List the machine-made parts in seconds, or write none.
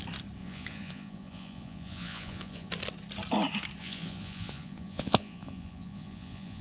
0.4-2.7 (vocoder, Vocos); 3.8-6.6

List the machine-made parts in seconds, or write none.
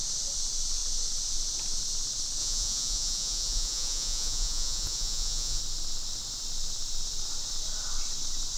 2.4-5.6 (vocoder, Vocos)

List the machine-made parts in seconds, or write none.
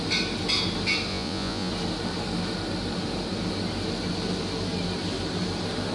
1.1-1.7 (vocoder, Vocos)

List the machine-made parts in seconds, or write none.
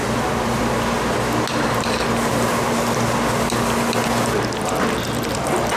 none